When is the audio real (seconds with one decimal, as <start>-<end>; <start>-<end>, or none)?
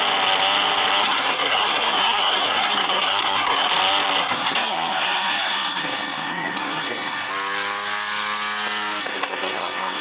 0.0-1.0; 3.7-4.2; 7.3-9.0